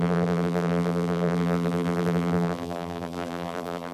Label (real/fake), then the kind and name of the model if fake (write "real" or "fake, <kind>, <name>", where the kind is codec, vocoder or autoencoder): fake, vocoder, BigVGAN v2